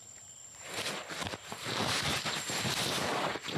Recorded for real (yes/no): no